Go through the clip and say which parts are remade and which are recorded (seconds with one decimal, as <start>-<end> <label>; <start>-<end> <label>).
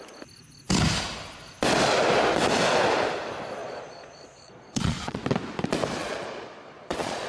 0.0-3.6 recorded; 3.6-5.2 remade; 5.2-6.0 recorded; 6.0-7.3 remade